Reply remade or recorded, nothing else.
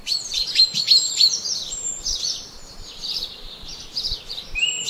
remade